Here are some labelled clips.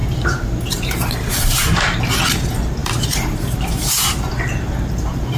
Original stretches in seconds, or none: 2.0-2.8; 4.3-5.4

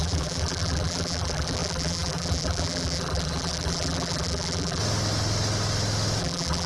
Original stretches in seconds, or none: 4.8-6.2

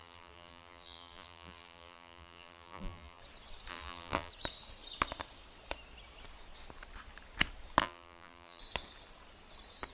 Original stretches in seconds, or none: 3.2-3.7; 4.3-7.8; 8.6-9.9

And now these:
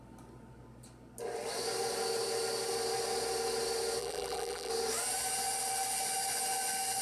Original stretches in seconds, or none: 0.0-4.0; 4.7-7.0

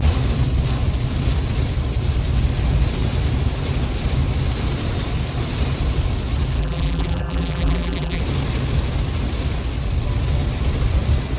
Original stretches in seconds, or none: 0.0-6.6; 8.2-11.4

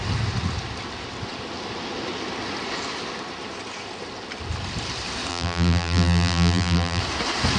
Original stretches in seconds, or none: 0.0-5.3; 7.0-7.6

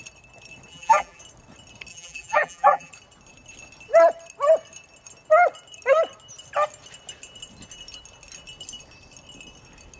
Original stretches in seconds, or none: 0.0-0.7; 1.2-1.9; 2.9-10.0